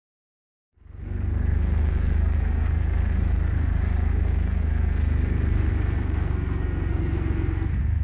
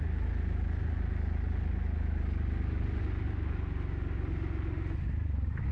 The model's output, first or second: first